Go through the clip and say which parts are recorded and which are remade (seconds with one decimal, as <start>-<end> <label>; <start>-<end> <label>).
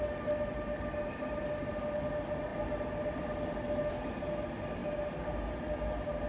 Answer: 0.0-6.3 recorded